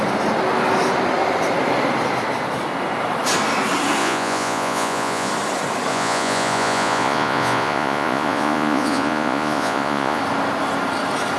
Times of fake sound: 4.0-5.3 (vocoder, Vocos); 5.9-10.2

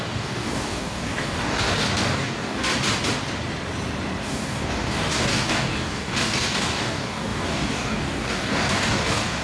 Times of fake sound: 0.0-2.7 (codec, DAC); 4.2-9.4